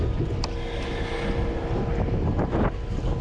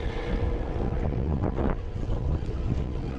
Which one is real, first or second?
first